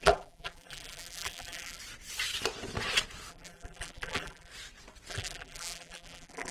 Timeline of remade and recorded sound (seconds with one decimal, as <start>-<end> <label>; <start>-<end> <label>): 0.0-1.8 remade; 1.8-3.3 recorded; 3.3-4.5 remade; 4.5-5.1 recorded; 5.1-6.5 remade